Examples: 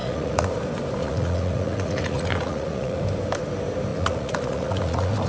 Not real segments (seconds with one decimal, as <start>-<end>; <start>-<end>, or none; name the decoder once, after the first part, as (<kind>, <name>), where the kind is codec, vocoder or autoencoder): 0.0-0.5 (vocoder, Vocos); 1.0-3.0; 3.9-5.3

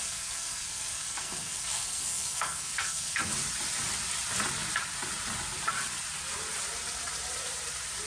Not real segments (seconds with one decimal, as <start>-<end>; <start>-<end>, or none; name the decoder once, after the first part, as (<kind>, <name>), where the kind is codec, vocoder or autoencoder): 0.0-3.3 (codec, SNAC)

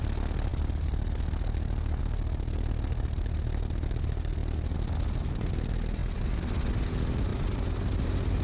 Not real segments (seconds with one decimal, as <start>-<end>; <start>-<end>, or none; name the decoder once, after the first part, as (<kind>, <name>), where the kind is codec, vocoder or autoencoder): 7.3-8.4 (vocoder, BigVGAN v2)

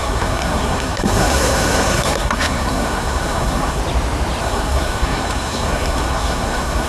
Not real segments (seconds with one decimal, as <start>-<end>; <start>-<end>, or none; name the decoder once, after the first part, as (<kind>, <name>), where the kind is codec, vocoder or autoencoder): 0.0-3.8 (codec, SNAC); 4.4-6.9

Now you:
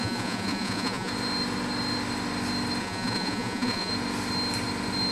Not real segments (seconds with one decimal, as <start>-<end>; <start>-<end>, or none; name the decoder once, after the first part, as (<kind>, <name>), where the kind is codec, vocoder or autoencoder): 0.0-1.1 (vocoder, Vocos); 2.8-3.9